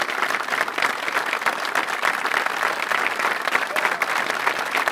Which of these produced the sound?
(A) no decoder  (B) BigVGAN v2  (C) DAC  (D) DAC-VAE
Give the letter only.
A